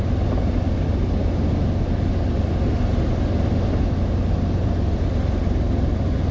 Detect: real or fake real